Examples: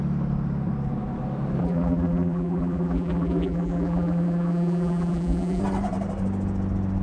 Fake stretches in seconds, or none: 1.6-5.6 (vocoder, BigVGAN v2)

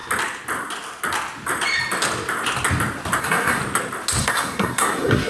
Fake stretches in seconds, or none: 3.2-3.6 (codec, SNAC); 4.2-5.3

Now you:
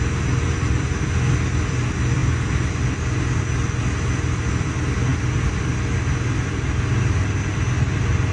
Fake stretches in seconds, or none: none

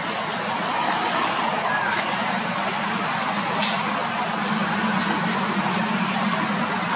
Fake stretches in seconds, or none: none

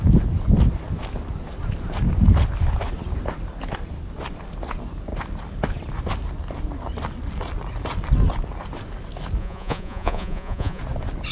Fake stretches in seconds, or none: 9.4-10.8 (vocoder, Vocos)

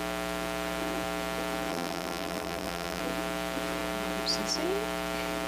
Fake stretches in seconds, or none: 1.7-3.0 (vocoder, BigVGAN v2)

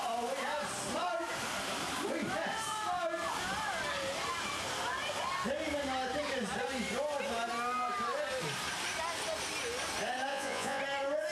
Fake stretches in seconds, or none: 10.3-10.8 (vocoder, Vocos)

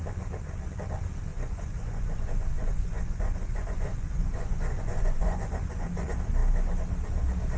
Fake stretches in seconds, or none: 1.3-5.9 (vocoder, Vocos)